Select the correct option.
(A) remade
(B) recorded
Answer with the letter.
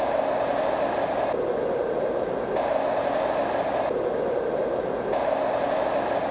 B